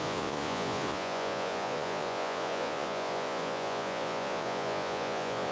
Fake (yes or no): yes